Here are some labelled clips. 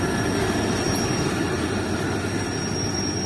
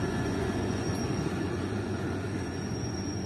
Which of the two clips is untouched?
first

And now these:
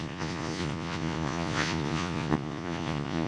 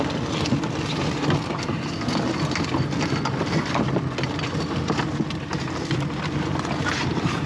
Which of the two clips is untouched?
second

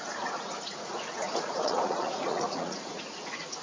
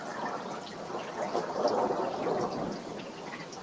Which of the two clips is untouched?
second